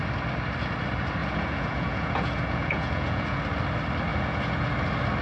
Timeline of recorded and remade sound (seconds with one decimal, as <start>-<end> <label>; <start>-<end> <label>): 0.0-1.2 recorded; 1.2-3.4 remade; 3.4-4.1 recorded; 4.1-4.7 remade; 4.7-5.2 recorded